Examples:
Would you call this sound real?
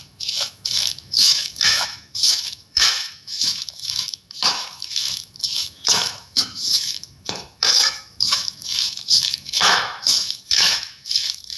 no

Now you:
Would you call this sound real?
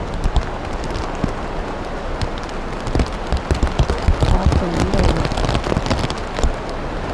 yes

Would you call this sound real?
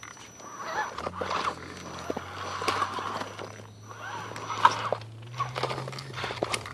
yes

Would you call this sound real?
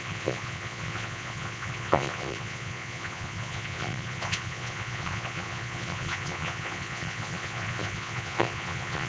no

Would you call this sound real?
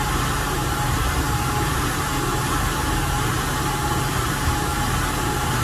no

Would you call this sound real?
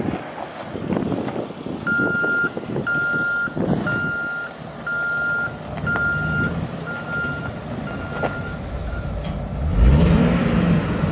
yes